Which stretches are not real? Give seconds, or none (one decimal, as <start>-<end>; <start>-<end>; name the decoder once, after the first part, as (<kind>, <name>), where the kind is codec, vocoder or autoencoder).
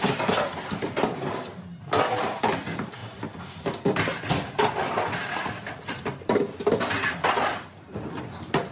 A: none